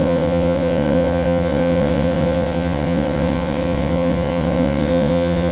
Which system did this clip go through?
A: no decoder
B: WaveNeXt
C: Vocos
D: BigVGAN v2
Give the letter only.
B